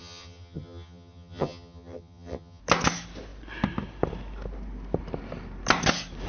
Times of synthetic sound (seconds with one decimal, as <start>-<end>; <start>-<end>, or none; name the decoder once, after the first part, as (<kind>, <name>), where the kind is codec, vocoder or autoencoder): 0.0-2.6 (vocoder, HiFi-GAN)